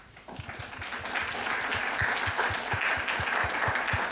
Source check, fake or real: real